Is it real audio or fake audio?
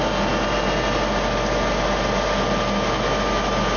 real